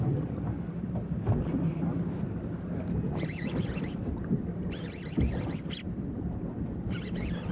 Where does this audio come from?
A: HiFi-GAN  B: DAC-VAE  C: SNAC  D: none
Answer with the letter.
D